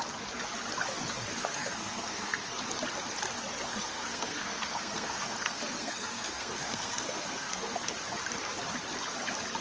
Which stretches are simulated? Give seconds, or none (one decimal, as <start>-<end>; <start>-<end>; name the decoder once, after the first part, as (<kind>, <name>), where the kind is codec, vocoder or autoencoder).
1.3-2.6 (codec, SNAC); 3.7-7.9